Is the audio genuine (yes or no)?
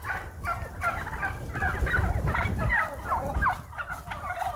yes